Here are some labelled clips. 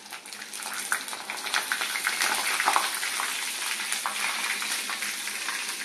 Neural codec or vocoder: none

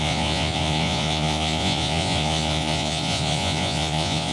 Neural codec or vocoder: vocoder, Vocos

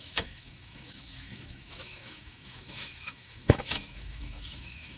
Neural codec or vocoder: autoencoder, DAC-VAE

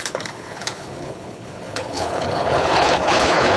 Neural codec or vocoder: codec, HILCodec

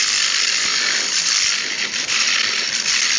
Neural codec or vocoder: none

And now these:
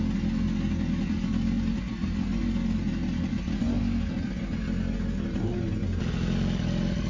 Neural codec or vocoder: none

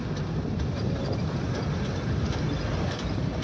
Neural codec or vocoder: none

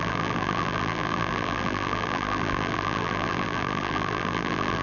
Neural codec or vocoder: vocoder, BigVGAN v2